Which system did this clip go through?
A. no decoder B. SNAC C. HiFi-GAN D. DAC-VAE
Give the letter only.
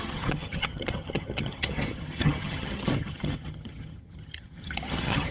C